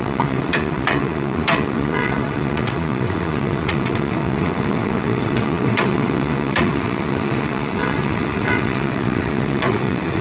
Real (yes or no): no